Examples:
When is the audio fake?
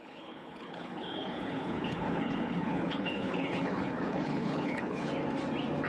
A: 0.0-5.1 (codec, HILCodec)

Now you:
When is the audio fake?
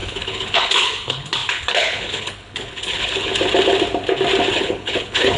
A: 0.0-3.3 (codec, HILCodec); 4.5-5.4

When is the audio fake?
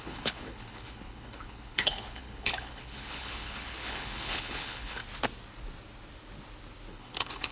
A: 0.0-5.0 (codec, HILCodec); 6.9-7.5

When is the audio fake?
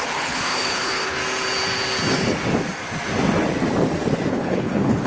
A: 0.0-1.2 (codec, HILCodec); 4.3-5.1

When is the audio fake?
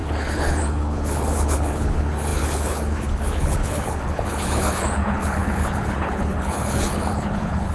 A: 0.0-7.7 (codec, HILCodec)